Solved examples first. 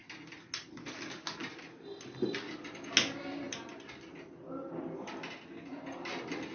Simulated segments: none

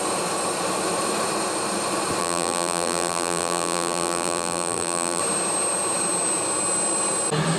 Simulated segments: 2.2-5.2 (vocoder, BigVGAN v2)

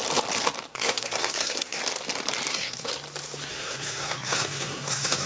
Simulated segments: 0.7-1.8 (codec, SNAC); 2.5-2.9; 3.5-5.3

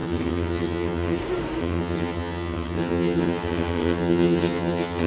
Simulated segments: 0.0-1.2 (vocoder, HiFi-GAN); 1.6-5.1

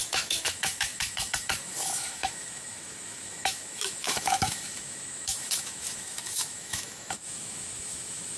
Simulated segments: 0.0-8.4 (autoencoder, DAC-VAE)

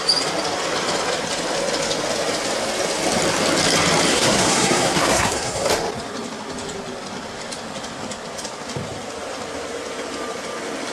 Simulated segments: 4.1-5.7 (codec, SNAC)

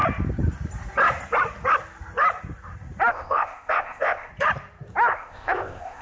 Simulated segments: 3.1-4.3 (codec, ZipCodec); 5.1-6.0